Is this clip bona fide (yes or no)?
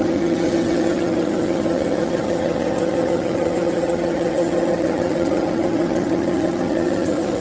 no